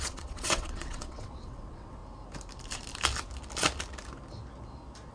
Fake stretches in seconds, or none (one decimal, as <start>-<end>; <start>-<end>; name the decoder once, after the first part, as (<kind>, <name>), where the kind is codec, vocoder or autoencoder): 0.0-2.0 (vocoder, WaveNeXt)